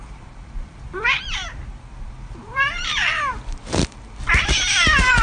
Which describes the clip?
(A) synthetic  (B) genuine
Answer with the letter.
A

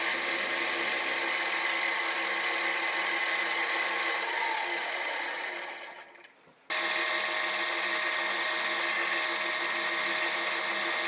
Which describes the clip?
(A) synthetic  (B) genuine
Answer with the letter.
B